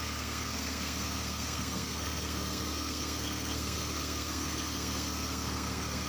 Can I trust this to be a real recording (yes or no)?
no